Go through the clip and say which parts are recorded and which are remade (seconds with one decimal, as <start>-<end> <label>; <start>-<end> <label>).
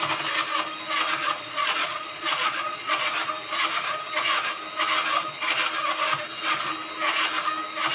0.0-1.2 recorded; 1.2-2.9 remade; 2.9-7.9 recorded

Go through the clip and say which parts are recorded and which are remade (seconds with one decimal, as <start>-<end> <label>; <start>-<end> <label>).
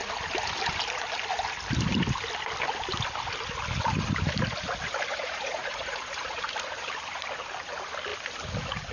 0.0-5.1 recorded; 5.1-6.4 remade; 6.4-8.9 recorded